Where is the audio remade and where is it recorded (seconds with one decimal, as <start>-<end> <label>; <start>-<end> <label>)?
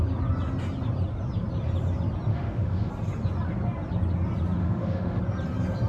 0.0-2.3 recorded; 2.3-2.9 remade; 2.9-4.6 recorded; 4.6-5.2 remade; 5.2-5.9 recorded